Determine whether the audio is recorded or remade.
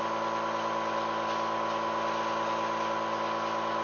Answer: recorded